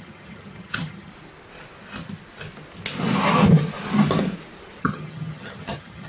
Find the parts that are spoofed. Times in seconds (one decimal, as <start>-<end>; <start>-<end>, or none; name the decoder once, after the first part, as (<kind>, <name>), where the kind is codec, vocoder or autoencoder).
0.0-1.1 (vocoder, HiFi-GAN); 4.8-6.1